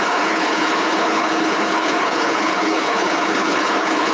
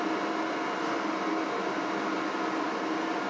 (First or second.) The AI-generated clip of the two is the first